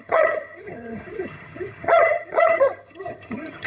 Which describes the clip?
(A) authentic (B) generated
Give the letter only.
B